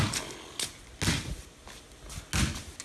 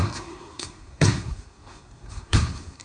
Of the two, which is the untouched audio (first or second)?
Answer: first